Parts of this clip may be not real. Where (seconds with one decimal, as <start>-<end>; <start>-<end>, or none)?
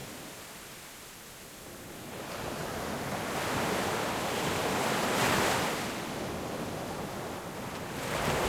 none